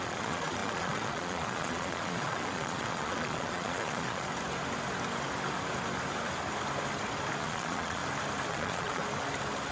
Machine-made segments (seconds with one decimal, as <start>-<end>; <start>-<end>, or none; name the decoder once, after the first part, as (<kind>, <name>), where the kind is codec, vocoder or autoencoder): 0.0-4.3 (vocoder, Vocos); 7.4-8.0; 8.5-9.0